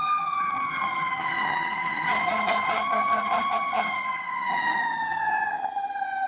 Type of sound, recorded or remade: remade